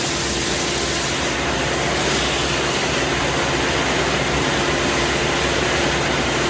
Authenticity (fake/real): real